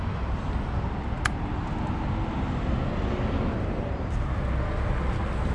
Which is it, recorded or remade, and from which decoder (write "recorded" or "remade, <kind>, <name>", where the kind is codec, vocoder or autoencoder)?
recorded